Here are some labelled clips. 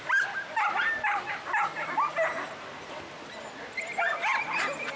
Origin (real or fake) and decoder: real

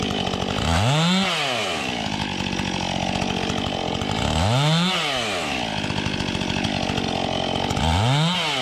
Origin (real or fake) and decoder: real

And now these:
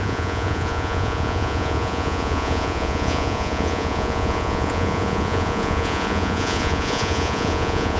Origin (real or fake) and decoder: fake, vocoder, Vocos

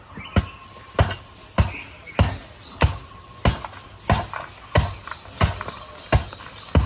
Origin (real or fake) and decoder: real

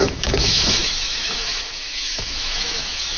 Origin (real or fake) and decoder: fake, autoencoder, DAC-VAE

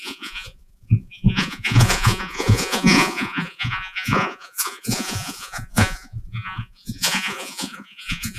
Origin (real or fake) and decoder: fake, vocoder, Vocos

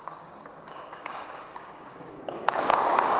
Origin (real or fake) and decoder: fake, codec, DAC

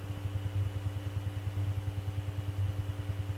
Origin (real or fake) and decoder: real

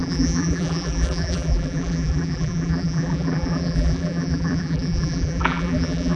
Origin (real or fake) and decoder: fake, vocoder, BigVGAN v2